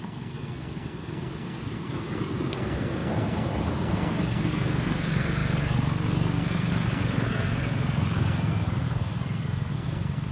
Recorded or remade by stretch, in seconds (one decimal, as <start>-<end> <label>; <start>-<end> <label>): 0.0-10.3 remade